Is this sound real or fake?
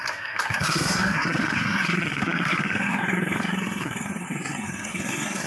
fake